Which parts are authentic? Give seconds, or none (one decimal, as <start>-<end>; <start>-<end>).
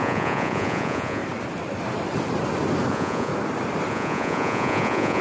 1.2-2.9; 3.3-3.9